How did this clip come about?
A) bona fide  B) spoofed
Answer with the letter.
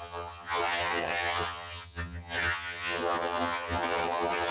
B